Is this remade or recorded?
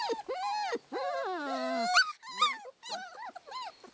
recorded